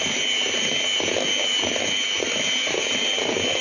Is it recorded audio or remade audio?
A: recorded